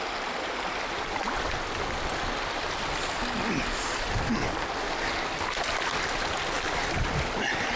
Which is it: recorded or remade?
recorded